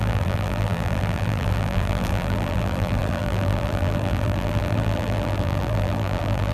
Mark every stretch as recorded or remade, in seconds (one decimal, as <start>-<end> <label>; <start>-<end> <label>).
0.0-6.5 remade